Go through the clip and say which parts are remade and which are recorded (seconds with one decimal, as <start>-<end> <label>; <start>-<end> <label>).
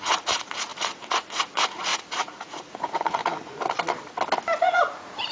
0.0-3.2 remade; 3.2-4.6 recorded; 4.6-5.3 remade